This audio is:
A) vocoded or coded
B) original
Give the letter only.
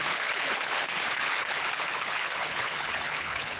A